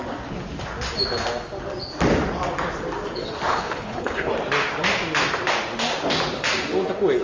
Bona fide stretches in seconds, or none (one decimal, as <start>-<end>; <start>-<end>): 0.0-3.5; 4.3-7.2